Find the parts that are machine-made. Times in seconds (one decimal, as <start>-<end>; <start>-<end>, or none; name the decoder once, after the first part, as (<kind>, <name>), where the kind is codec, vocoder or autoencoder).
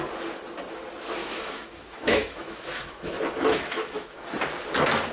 1.2-4.3 (autoencoder, DAC-VAE)